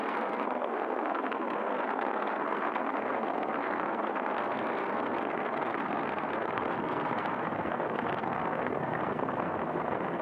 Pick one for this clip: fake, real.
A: fake